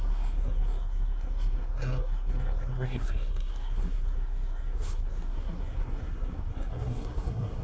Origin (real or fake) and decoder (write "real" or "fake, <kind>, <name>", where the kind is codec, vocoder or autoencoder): fake, codec, SNAC